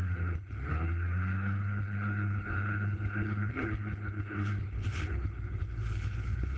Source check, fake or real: fake